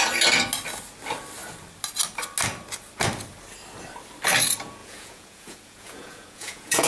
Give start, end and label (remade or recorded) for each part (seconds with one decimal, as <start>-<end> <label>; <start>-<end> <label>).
0.0-4.8 recorded; 4.8-6.9 remade